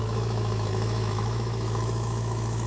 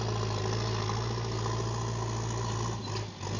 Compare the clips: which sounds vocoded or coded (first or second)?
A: first